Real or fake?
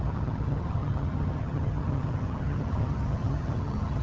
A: fake